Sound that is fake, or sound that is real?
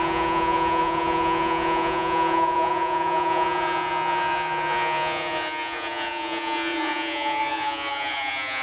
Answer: fake